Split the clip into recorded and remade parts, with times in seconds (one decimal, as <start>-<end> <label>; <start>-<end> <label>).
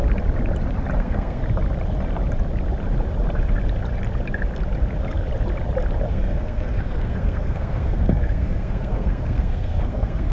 0.0-1.0 recorded; 1.0-1.4 remade; 1.4-6.1 recorded; 6.1-10.3 remade